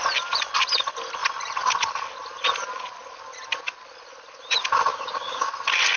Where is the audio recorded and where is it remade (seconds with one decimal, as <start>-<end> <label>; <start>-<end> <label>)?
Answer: 0.0-4.9 recorded; 4.9-5.5 remade; 5.5-6.0 recorded

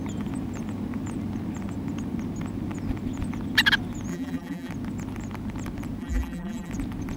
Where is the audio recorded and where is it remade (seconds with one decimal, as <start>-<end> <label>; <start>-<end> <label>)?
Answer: 0.0-4.1 recorded; 4.1-4.7 remade; 4.7-6.0 recorded; 6.0-6.7 remade; 6.7-7.2 recorded